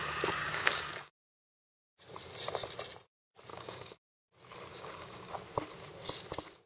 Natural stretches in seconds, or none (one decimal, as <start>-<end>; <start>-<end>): 0.0-0.4; 1.2-3.5; 4.2-4.7; 5.3-6.7